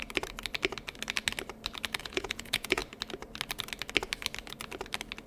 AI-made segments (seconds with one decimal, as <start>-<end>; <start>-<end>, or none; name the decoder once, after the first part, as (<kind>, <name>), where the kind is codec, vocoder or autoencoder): 2.0-2.8 (vocoder, Vocos)